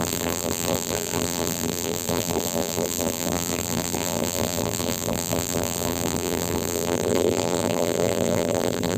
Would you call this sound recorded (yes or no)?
no